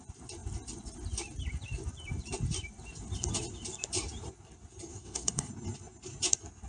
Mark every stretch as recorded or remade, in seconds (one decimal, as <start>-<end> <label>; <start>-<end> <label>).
0.0-4.9 recorded; 4.9-5.5 remade; 5.5-6.7 recorded